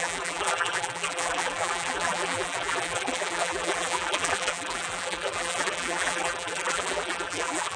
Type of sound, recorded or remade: remade